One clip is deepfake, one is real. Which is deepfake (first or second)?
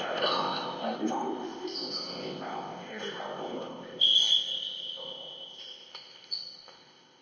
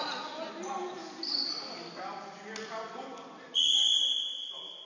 first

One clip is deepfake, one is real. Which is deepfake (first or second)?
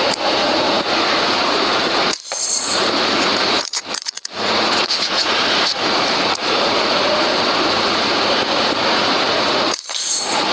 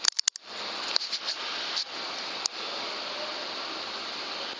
first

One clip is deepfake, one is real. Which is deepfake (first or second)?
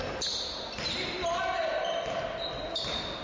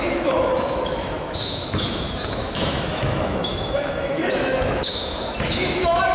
second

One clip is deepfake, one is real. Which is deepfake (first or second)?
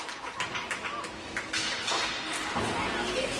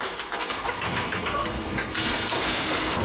second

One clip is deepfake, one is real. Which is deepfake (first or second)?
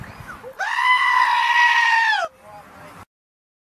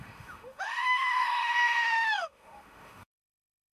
second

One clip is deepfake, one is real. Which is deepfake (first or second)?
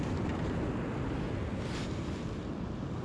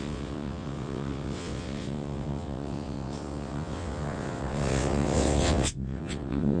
second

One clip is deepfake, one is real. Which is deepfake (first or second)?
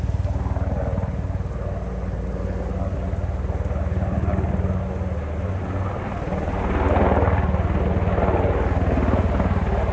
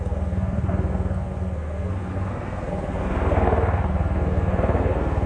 second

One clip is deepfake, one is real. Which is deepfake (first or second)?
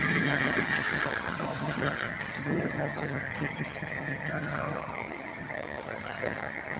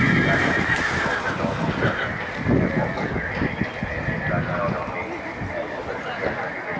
first